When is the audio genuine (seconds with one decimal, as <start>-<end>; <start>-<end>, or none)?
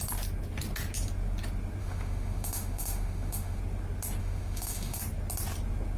0.0-1.8; 3.6-4.2; 5.0-6.0